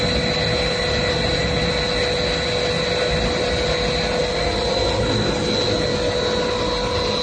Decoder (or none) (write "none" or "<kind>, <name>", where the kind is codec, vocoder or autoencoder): none